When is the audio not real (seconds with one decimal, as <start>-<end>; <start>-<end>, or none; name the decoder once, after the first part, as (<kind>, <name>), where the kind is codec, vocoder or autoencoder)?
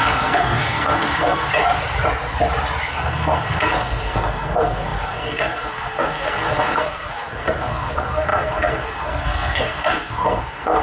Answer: 0.0-1.5 (codec, SNAC); 2.9-10.8